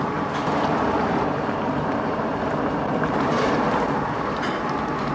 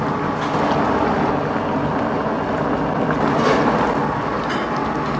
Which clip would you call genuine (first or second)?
second